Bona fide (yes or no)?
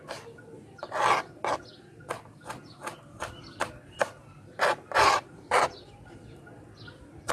yes